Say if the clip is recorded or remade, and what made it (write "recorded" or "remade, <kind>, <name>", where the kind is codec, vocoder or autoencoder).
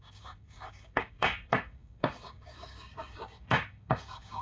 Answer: remade, codec, DAC